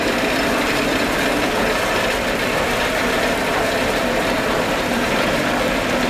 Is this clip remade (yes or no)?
yes